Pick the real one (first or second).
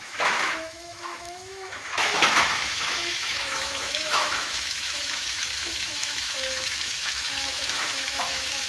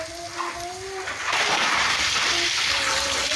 second